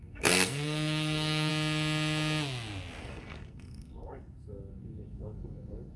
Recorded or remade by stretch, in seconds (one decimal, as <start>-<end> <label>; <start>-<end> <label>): 0.0-1.5 remade; 1.5-3.0 recorded; 3.0-6.0 remade